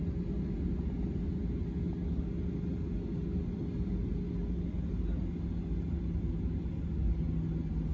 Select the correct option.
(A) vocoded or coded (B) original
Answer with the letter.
B